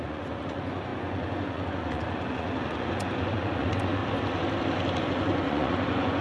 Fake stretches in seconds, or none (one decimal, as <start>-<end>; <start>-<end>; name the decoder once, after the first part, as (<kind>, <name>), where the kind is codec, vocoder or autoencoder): 0.0-4.0 (vocoder, Vocos); 5.0-6.2